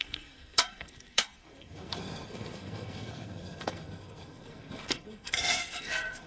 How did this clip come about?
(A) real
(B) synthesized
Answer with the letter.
B